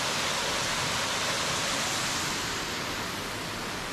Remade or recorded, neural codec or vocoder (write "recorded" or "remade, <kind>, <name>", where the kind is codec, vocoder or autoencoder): recorded